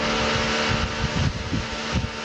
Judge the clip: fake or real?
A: real